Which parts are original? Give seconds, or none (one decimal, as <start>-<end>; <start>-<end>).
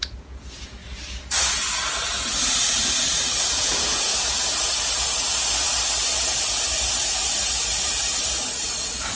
0.8-3.4; 4.1-8.7